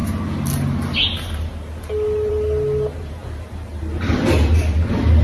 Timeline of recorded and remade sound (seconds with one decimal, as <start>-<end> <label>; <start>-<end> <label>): 0.0-5.2 recorded